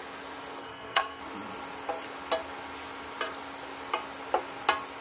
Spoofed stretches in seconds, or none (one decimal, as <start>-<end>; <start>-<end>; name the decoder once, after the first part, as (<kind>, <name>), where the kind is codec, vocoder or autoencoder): 0.6-1.2 (codec, SNAC)